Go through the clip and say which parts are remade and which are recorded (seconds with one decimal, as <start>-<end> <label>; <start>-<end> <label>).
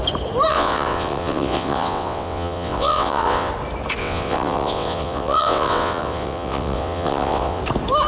0.0-0.5 recorded; 0.5-3.5 remade; 3.5-4.0 recorded; 4.0-7.6 remade; 7.6-8.1 recorded